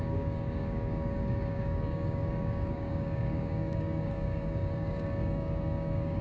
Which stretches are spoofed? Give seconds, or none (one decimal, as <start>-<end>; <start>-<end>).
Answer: 0.0-6.2